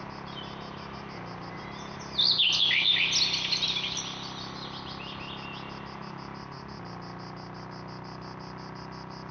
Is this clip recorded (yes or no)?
yes